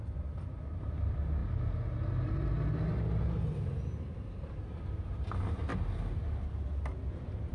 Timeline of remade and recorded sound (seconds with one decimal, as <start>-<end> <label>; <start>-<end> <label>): 0.0-7.5 recorded